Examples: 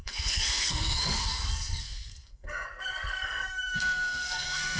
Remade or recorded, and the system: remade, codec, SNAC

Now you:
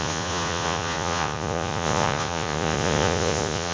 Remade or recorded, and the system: remade, vocoder, Vocos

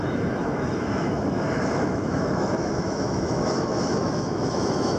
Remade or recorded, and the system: remade, autoencoder, DAC-VAE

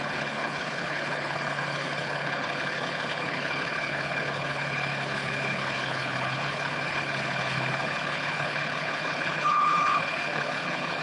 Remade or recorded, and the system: remade, codec, HILCodec